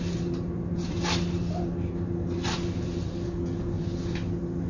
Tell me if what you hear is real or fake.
real